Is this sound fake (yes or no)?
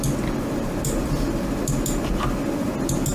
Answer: no